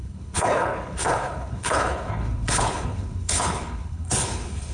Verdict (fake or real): fake